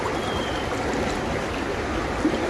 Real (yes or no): yes